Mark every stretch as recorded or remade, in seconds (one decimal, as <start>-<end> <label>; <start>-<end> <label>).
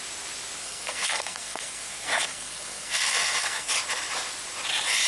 0.0-0.6 recorded; 0.6-3.7 remade; 3.7-5.1 recorded